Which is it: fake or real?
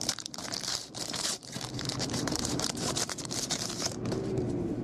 fake